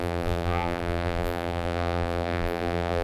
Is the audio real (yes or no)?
no